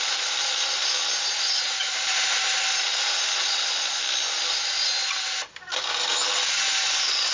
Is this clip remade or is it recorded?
recorded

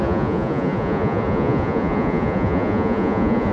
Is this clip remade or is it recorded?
remade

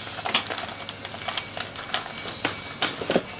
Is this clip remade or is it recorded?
recorded